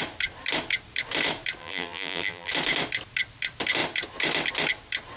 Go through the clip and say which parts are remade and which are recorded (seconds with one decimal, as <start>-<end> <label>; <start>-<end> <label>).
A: 0.0-1.6 recorded; 1.6-2.5 remade; 2.5-5.2 recorded